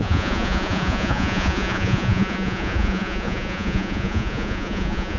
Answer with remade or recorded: remade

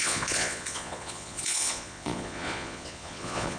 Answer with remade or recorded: remade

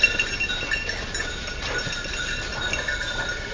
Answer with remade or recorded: recorded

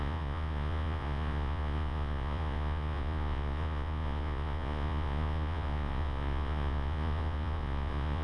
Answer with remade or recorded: remade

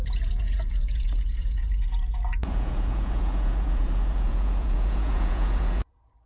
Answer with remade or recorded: remade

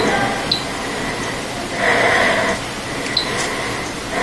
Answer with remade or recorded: recorded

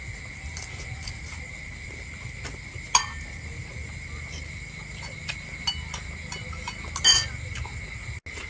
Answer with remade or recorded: recorded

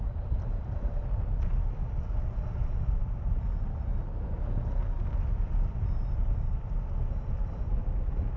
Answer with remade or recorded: recorded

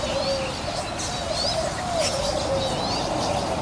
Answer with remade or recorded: recorded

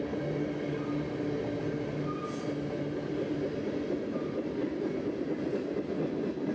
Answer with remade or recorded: recorded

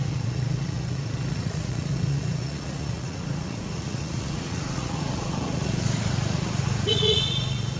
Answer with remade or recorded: remade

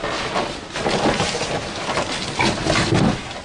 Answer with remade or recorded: recorded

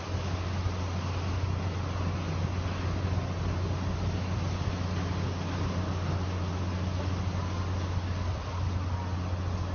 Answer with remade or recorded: recorded